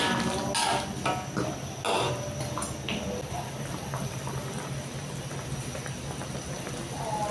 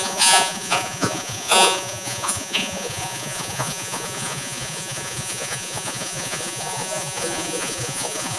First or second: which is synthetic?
second